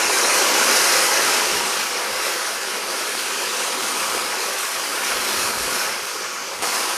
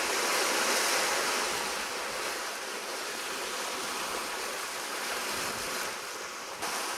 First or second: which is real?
second